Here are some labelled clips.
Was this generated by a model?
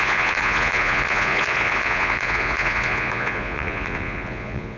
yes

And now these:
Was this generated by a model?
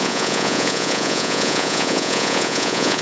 yes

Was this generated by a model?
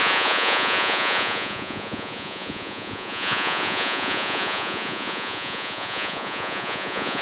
yes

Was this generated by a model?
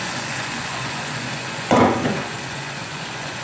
yes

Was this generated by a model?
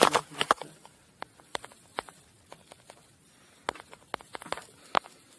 no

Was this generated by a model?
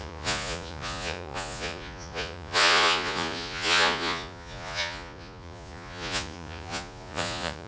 yes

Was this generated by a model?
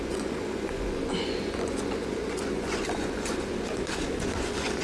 yes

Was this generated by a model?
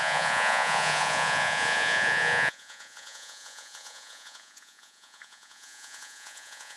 yes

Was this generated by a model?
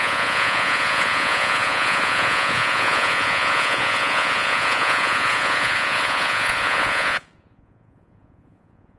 yes